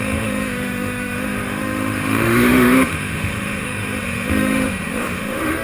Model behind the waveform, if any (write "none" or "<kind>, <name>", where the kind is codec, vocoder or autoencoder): autoencoder, DAC-VAE